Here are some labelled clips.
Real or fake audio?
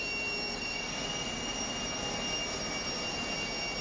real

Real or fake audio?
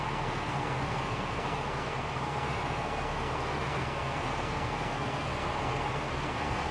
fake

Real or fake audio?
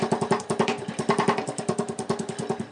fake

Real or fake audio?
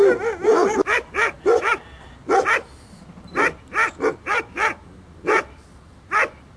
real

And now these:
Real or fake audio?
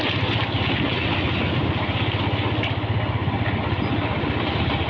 real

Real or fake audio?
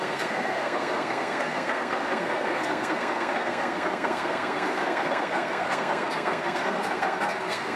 fake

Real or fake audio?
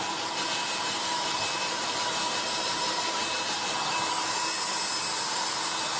real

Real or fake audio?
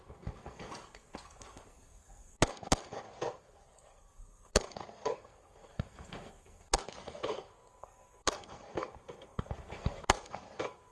fake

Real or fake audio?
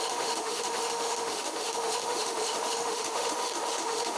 fake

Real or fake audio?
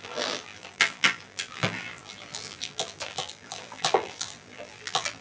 fake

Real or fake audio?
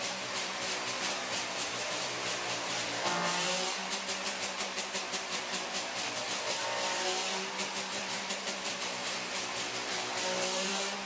fake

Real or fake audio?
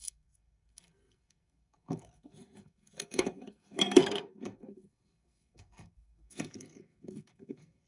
fake